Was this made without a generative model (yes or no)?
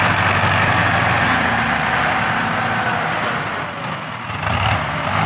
yes